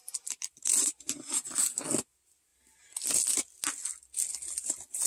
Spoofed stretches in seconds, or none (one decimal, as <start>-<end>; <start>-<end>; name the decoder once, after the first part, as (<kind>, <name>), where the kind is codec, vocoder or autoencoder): 0.0-1.5 (vocoder, BigVGAN v2)